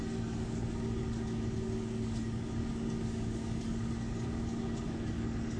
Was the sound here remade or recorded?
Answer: remade